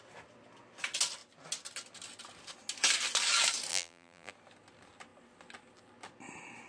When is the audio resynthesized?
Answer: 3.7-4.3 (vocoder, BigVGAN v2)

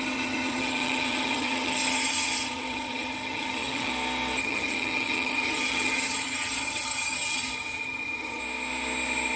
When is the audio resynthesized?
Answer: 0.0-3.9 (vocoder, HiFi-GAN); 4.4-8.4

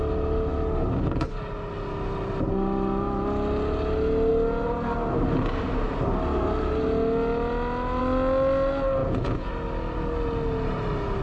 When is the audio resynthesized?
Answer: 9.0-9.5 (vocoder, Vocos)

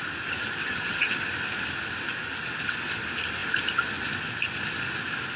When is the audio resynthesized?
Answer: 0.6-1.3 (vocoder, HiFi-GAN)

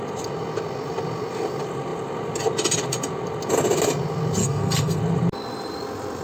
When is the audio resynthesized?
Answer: 4.4-5.0 (codec, SNAC)